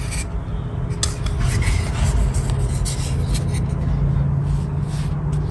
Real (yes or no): yes